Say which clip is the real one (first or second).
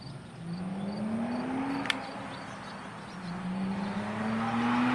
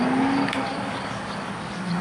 first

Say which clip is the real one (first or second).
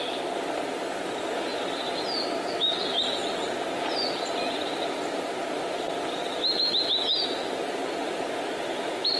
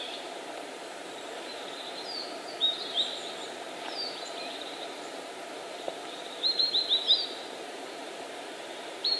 first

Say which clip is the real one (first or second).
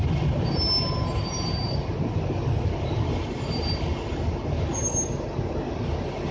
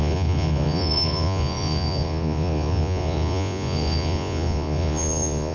first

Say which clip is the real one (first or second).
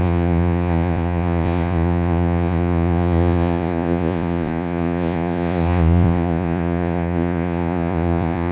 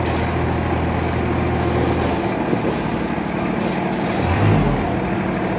second